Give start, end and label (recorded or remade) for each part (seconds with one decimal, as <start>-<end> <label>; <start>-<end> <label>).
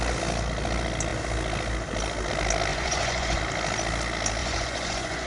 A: 0.0-2.7 recorded; 2.7-3.4 remade; 3.4-4.4 recorded; 4.4-5.3 remade